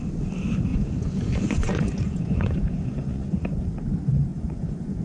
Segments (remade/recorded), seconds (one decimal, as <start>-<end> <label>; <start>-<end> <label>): 0.0-0.7 recorded; 0.7-3.7 remade; 3.7-4.3 recorded; 4.3-5.0 remade